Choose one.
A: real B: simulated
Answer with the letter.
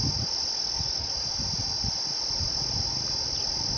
A